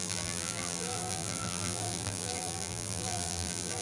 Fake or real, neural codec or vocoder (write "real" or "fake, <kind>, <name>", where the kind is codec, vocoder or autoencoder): fake, vocoder, BigVGAN v2